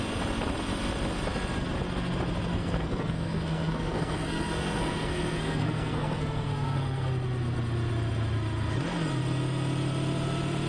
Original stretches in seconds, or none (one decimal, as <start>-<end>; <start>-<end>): 0.0-2.5; 7.1-10.7